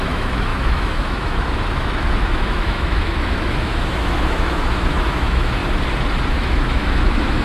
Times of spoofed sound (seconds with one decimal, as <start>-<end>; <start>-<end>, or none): 0.0-5.6; 6.3-7.4